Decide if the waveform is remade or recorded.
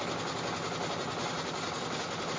recorded